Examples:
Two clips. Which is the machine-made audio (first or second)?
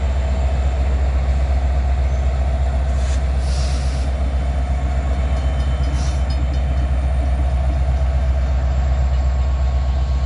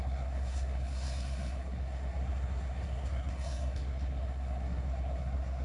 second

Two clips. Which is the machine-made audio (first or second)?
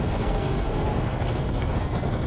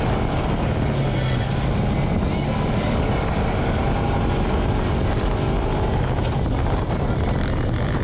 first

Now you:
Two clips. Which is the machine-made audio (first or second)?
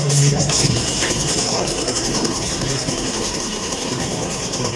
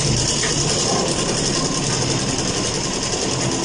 first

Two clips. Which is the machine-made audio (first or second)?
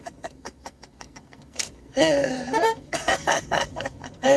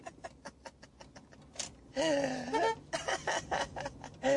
first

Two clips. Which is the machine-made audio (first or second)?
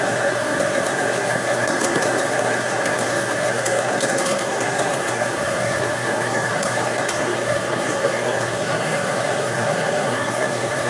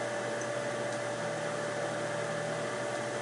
first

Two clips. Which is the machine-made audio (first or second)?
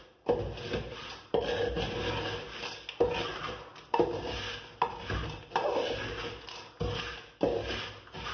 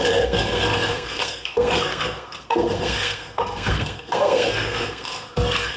second